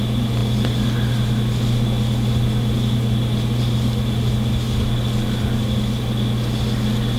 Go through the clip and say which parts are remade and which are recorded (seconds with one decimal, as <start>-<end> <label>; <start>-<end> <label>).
0.0-7.2 recorded